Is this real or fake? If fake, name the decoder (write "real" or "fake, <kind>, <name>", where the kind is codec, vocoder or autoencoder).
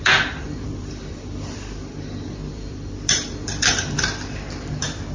fake, vocoder, BigVGAN v2